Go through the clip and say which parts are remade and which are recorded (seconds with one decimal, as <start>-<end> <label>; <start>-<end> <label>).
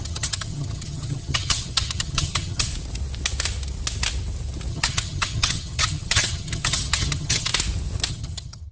0.0-2.7 remade; 2.7-4.7 recorded; 4.7-7.5 remade; 7.5-8.1 recorded; 8.1-8.7 remade